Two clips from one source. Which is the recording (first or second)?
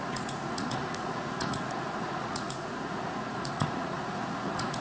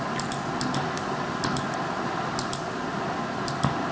second